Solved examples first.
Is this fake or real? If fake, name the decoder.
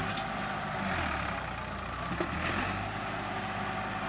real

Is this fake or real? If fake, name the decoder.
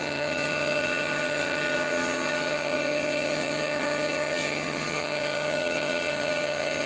fake, vocoder, HiFi-GAN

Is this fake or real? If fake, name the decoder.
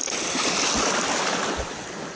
real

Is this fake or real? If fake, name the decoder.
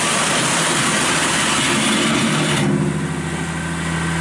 real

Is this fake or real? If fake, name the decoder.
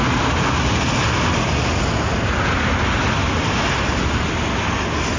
real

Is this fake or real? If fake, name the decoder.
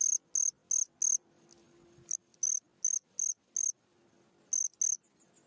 real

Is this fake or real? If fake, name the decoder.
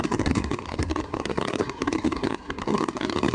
fake, codec, SNAC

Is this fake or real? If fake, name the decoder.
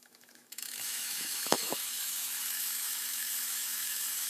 fake, autoencoder, DAC-VAE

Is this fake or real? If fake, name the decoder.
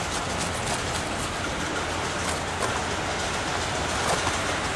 real